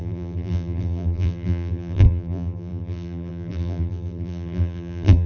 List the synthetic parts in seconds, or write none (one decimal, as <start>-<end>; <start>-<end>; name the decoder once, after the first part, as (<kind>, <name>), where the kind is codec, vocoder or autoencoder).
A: 0.0-5.3 (vocoder, BigVGAN v2)